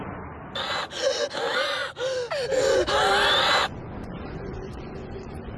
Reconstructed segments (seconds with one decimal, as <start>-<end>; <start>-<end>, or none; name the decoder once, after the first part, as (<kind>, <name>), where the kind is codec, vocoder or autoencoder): 3.6-5.6 (vocoder, Vocos)